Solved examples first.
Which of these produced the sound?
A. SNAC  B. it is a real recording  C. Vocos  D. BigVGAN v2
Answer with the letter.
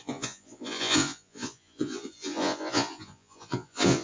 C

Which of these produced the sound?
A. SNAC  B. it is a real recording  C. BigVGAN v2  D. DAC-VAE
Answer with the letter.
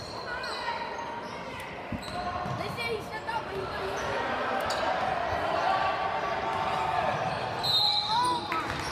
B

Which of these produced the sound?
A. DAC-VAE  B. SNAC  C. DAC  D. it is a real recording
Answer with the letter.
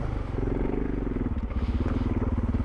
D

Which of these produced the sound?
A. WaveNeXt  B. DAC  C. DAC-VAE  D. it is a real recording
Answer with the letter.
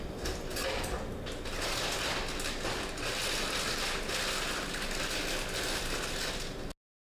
D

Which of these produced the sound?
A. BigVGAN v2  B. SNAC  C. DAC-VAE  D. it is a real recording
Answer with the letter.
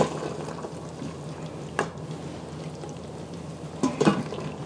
D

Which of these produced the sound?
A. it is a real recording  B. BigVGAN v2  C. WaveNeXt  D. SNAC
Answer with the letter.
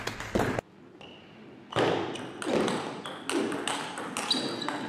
A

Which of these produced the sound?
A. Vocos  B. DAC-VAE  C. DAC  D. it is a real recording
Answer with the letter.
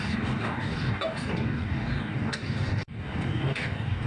C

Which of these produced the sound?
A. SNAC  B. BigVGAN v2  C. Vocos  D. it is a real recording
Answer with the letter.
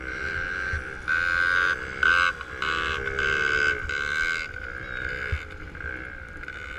D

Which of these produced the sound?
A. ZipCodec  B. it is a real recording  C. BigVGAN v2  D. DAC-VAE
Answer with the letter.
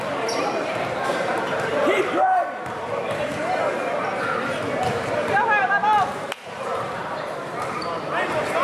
C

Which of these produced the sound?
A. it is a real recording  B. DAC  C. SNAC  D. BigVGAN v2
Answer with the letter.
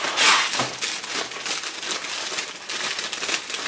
A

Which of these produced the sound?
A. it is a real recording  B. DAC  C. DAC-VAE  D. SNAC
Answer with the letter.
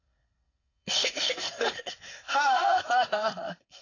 D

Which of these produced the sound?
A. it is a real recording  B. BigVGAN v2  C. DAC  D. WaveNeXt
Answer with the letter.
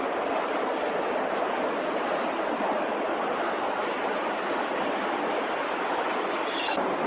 B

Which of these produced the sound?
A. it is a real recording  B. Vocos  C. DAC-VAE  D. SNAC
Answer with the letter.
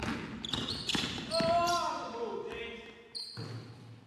A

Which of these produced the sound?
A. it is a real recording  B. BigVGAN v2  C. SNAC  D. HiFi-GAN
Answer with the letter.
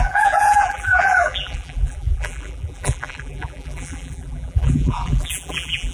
B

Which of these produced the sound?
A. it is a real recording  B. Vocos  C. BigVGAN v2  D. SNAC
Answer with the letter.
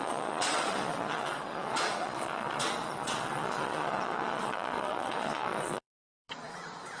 B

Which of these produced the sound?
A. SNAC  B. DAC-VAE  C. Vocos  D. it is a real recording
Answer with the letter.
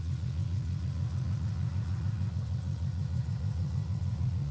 C